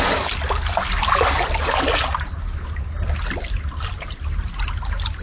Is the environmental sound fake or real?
real